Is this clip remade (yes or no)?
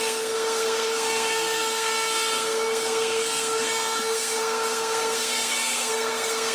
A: yes